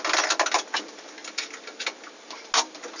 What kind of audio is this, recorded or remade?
recorded